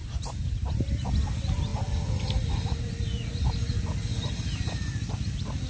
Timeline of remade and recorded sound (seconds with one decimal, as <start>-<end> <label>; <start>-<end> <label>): 0.0-0.7 remade; 0.7-5.7 recorded